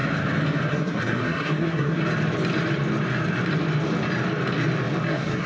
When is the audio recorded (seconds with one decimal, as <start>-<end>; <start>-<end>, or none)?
0.0-0.7; 2.0-5.1